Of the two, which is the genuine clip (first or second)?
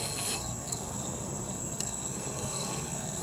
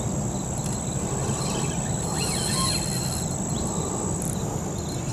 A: second